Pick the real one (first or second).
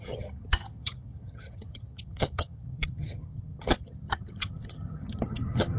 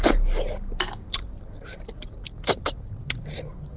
second